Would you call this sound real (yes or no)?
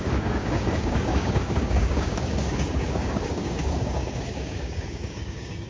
no